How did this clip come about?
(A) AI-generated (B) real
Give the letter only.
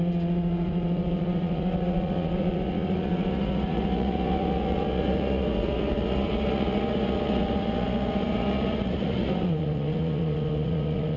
A